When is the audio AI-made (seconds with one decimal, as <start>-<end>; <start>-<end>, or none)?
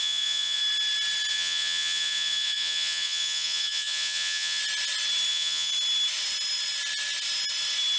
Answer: 0.0-0.6; 1.3-4.6; 5.3-5.7